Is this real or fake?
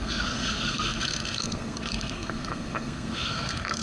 fake